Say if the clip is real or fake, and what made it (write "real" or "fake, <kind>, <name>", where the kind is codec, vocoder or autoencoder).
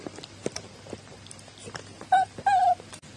fake, vocoder, BigVGAN v2